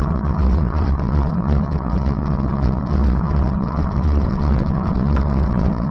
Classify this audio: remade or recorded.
remade